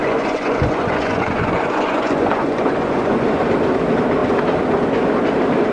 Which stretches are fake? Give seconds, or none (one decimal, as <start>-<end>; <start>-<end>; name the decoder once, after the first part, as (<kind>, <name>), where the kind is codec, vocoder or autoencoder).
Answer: 0.0-3.4 (vocoder, Vocos)